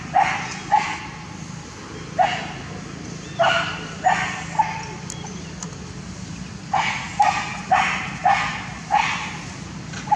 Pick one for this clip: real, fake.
real